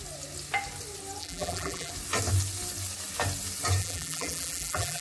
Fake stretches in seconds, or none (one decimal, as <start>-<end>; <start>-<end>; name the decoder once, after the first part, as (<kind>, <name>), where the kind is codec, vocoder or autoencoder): 1.2-1.9 (vocoder, BigVGAN v2); 3.8-5.0

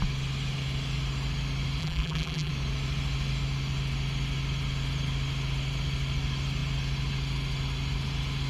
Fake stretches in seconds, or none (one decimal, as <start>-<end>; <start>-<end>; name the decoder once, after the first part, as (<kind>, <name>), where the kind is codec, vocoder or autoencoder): 1.8-2.5 (vocoder, BigVGAN v2)

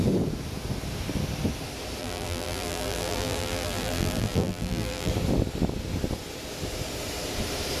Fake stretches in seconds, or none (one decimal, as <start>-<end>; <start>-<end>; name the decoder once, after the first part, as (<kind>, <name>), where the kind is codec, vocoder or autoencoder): 2.0-5.1 (vocoder, BigVGAN v2)

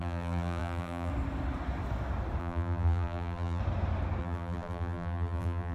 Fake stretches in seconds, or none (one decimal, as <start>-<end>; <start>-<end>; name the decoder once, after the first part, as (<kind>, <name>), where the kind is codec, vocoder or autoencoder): 0.0-1.1 (vocoder, BigVGAN v2); 2.4-3.6; 4.2-5.7